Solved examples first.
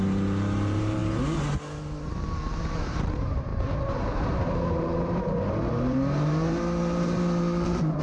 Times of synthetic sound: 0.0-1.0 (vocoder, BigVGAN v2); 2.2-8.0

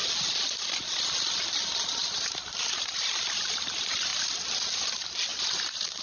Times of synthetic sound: 2.0-3.5 (vocoder, BigVGAN v2); 5.3-6.0

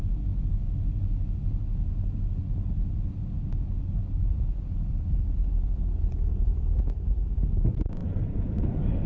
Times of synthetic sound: 6.3-6.8 (vocoder, BigVGAN v2); 8.0-9.1

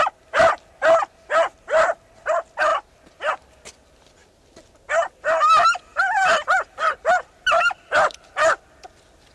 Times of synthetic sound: 2.7-3.3 (vocoder, BigVGAN v2); 5.9-8.2

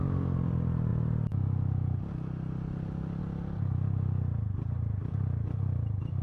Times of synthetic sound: none

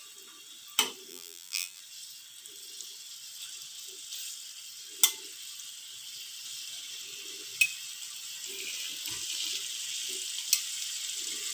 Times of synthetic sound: 1.1-1.8 (vocoder, BigVGAN v2)